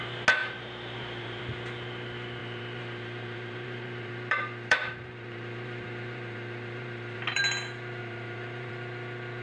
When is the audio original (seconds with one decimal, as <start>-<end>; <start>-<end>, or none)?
0.0-0.4; 1.4-2.4; 7.4-8.0; 8.7-9.4